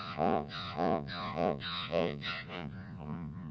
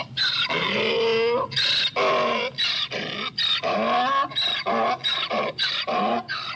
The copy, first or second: first